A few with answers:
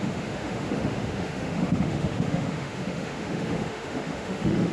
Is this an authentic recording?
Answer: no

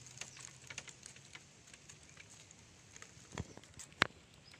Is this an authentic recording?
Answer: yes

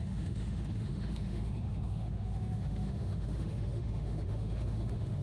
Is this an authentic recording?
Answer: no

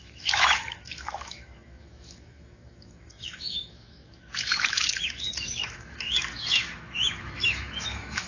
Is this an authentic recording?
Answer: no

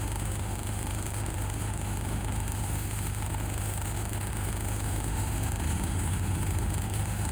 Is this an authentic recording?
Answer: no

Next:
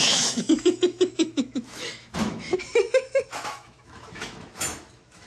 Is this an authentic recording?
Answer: no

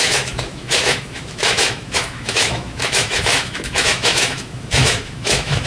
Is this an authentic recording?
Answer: no